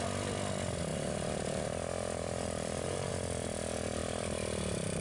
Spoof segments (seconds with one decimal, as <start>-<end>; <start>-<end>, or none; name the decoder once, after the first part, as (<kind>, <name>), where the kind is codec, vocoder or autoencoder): 0.9-3.1 (vocoder, BigVGAN v2)

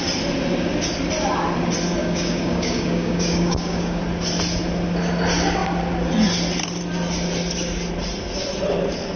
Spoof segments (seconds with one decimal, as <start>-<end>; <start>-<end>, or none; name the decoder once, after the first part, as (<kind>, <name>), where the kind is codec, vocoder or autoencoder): 2.0-4.0 (codec, DAC)